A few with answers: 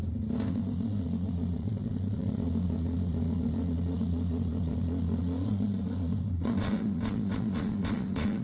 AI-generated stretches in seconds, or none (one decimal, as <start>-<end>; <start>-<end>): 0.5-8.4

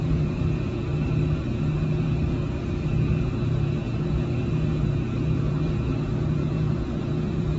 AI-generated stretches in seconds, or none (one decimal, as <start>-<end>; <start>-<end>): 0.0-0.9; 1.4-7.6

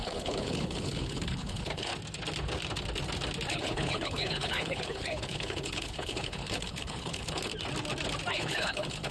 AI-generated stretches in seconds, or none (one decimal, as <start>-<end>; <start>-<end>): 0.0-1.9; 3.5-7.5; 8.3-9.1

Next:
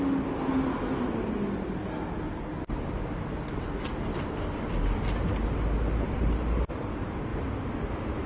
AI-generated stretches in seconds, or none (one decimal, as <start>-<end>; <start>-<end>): 7.3-7.9

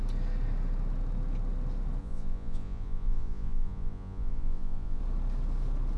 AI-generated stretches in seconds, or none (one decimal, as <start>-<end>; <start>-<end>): 2.0-5.0

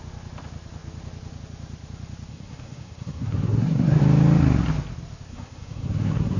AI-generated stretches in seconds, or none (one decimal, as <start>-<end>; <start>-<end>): 2.3-4.0; 5.3-6.4

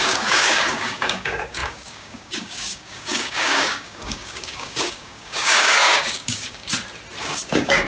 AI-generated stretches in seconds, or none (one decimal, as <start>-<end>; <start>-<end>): 0.0-6.7; 7.2-7.9